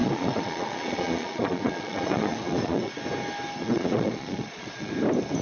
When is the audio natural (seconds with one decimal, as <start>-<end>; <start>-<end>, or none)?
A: 3.0-3.6; 4.9-5.4